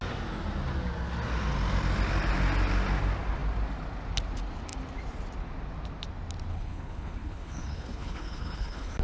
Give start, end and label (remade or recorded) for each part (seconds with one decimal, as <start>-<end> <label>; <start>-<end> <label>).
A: 0.0-6.5 recorded; 6.5-9.0 remade